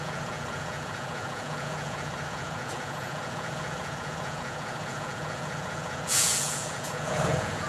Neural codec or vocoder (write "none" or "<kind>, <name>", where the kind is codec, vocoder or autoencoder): vocoder, Vocos